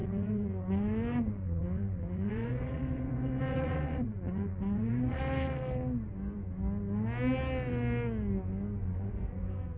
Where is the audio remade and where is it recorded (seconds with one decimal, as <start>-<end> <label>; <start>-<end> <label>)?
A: 0.0-5.2 remade; 5.2-8.8 recorded; 8.8-9.4 remade; 9.4-9.8 recorded